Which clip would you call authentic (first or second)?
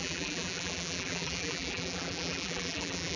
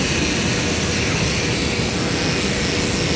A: second